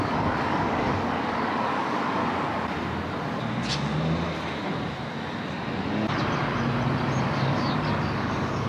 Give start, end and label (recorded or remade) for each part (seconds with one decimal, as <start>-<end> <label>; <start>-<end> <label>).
0.0-2.2 remade; 2.2-7.2 recorded; 7.2-8.7 remade